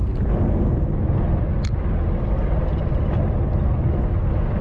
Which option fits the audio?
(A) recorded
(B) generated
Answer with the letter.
A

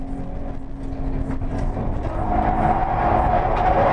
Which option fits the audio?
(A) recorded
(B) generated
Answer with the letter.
A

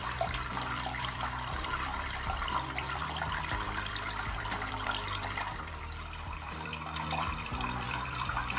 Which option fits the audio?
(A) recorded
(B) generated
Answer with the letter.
B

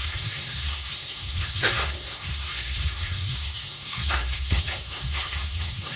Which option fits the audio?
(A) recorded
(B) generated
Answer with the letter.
B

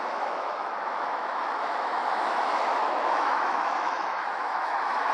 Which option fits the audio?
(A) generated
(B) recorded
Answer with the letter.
A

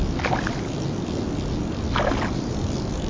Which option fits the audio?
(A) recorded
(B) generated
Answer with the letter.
A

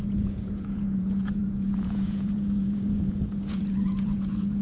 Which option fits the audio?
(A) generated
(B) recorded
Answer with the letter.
A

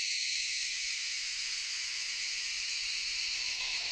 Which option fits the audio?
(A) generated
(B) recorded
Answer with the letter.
A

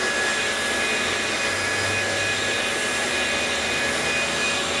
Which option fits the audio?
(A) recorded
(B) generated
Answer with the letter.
A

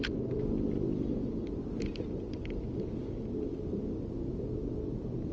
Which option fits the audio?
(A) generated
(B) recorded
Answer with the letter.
B